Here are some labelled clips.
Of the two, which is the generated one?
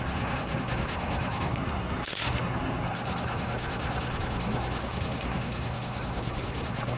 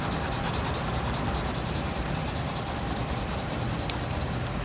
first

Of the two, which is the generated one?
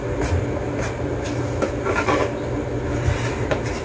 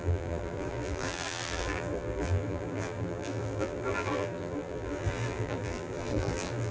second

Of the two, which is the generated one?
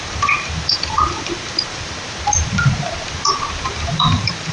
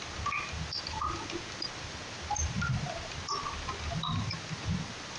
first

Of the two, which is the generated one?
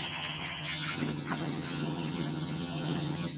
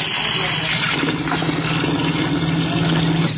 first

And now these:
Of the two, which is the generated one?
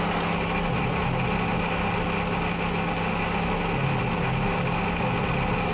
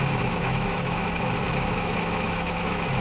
second